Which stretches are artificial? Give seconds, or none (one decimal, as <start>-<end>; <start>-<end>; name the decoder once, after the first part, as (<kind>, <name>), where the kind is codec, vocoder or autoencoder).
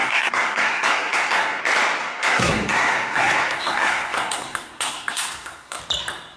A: 0.0-1.6 (codec, SNAC); 2.0-5.8